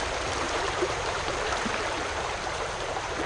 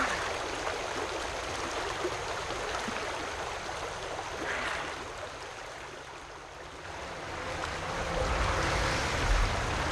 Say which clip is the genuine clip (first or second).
second